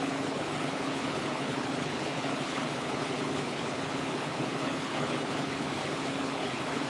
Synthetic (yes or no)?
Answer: yes